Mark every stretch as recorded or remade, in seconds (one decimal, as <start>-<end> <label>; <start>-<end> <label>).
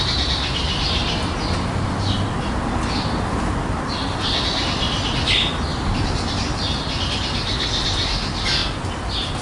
0.0-9.4 recorded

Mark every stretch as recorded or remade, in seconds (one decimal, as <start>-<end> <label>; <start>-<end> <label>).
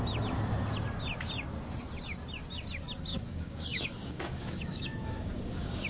0.0-3.1 recorded; 3.1-5.9 remade